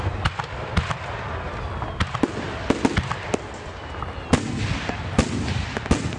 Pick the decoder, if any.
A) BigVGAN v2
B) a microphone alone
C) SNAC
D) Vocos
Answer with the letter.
B